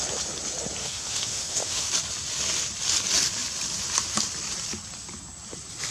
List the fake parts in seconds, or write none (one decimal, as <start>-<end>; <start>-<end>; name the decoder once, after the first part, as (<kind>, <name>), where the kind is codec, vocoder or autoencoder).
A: 0.8-1.9 (autoencoder, DAC-VAE)